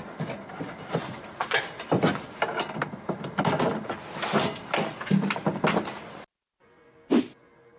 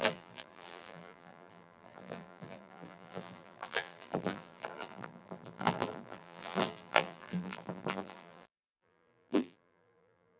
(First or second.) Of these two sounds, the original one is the first